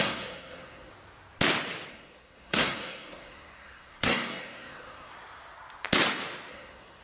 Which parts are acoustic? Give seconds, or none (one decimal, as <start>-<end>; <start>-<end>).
0.9-1.9; 5.1-6.5